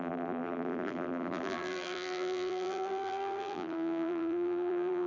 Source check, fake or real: fake